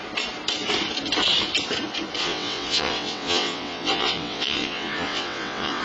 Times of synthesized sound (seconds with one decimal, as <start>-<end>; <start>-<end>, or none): 2.2-5.8